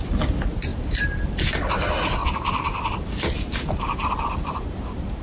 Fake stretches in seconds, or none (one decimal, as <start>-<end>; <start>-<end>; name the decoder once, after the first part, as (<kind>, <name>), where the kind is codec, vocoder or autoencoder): 0.7-1.5 (vocoder, BigVGAN v2); 2.2-3.8